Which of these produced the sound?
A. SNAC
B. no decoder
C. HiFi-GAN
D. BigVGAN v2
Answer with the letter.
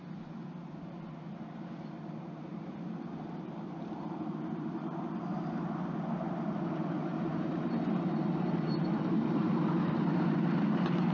B